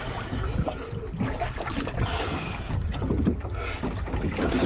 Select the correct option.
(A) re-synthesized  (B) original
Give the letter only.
B